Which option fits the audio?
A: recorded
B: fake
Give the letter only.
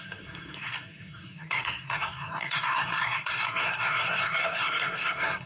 B